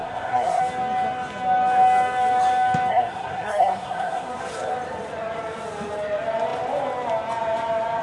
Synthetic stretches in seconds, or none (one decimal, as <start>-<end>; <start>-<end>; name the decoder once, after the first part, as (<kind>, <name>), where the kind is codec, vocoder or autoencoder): 0.0-0.6 (codec, SNAC); 2.9-4.3